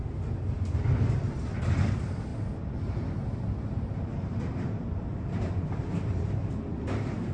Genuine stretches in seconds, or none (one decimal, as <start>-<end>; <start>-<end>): 0.0-7.3